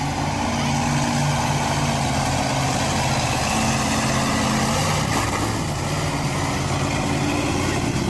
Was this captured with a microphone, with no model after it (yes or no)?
yes